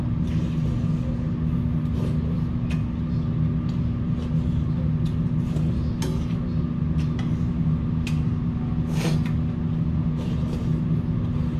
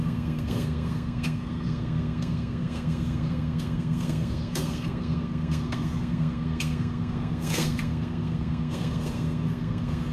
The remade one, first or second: second